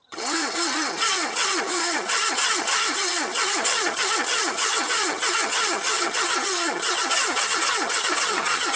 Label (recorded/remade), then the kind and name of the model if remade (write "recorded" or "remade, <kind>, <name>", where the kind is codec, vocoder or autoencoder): remade, vocoder, HiFi-GAN